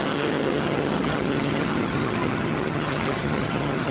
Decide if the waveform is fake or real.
fake